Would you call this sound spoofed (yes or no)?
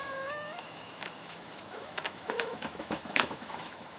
yes